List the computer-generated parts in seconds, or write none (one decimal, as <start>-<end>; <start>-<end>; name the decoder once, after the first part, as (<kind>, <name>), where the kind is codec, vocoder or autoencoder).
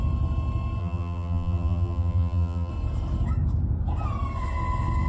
0.8-2.7 (vocoder, BigVGAN v2)